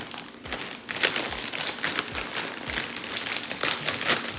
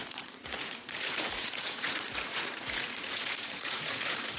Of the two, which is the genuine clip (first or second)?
first